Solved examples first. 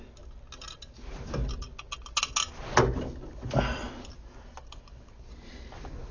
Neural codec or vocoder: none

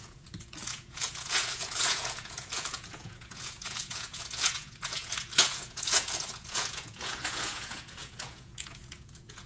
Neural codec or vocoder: vocoder, Vocos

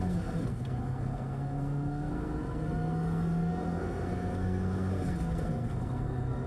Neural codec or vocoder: codec, SNAC